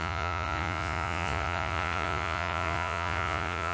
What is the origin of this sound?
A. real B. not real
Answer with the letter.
B